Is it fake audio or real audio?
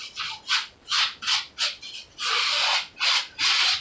real